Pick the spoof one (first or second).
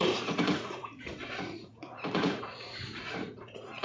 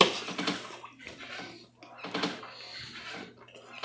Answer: first